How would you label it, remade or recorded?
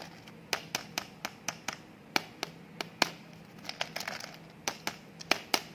recorded